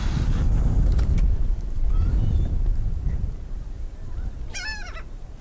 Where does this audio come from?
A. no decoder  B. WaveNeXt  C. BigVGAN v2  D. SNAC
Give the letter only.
C